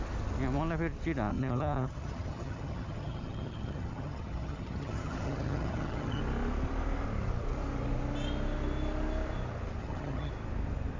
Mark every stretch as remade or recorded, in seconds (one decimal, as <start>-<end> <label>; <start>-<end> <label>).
0.0-1.3 recorded; 1.3-6.2 remade; 6.2-9.8 recorded; 9.8-10.3 remade; 10.3-11.0 recorded